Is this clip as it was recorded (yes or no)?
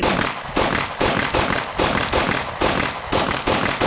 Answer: yes